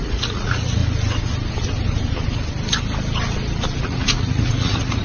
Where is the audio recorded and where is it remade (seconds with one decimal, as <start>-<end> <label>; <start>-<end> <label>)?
0.0-0.8 remade; 0.8-3.8 recorded; 3.8-5.0 remade